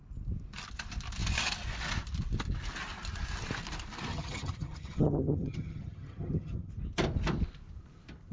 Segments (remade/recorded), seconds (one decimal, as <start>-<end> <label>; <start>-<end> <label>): 0.0-4.1 recorded; 4.1-6.7 remade; 6.7-8.3 recorded